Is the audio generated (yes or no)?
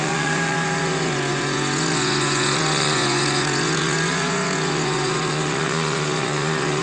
yes